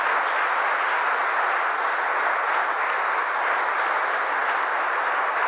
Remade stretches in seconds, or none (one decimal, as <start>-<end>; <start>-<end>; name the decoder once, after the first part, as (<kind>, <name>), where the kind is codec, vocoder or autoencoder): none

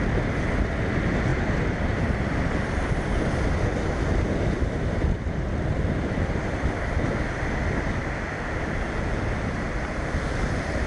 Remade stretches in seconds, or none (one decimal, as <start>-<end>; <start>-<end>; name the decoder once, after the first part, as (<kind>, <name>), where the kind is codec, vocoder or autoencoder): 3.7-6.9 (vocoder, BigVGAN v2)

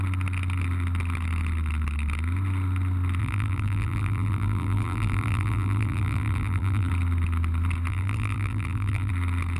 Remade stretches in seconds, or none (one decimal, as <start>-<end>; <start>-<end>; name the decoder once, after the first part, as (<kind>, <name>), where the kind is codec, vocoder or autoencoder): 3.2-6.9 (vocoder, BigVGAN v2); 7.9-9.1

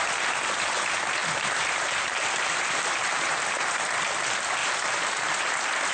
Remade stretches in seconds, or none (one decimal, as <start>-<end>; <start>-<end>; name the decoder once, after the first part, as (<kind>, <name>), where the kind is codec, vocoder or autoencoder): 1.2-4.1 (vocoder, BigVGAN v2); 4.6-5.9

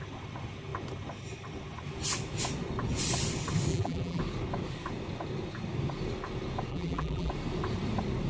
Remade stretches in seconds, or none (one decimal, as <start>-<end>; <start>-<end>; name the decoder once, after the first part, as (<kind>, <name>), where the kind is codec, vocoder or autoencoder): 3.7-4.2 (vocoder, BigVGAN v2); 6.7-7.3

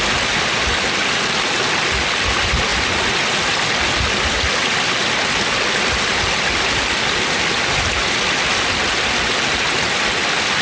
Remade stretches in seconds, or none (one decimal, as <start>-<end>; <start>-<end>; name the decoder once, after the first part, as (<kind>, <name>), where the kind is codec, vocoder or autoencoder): none

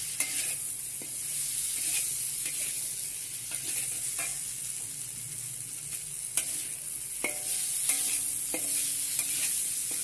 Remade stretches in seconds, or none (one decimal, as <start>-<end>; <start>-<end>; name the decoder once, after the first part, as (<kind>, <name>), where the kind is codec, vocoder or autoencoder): none